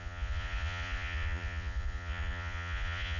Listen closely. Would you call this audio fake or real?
fake